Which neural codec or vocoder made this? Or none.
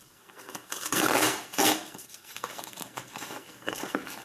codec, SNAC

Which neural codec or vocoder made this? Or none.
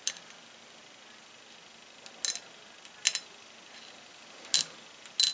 none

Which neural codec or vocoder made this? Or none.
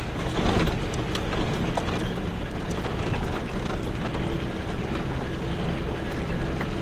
none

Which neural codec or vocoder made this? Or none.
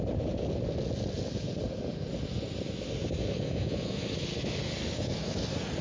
none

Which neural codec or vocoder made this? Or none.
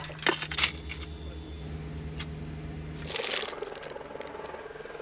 none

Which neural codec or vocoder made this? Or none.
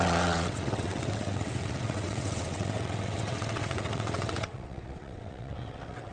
vocoder, WaveNeXt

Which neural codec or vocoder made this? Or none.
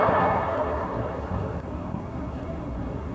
codec, SNAC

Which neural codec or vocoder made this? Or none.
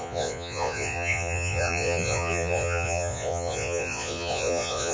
vocoder, Vocos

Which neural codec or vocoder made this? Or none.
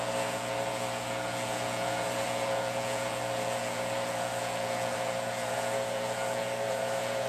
vocoder, Vocos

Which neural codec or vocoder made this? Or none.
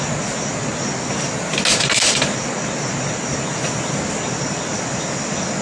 none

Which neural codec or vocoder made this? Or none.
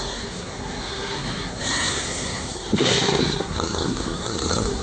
codec, SNAC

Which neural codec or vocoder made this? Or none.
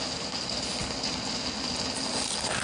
none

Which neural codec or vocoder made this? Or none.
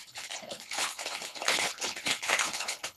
codec, HILCodec